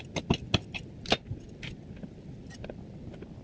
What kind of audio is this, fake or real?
real